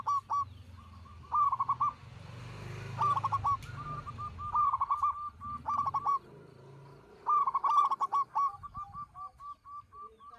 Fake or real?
real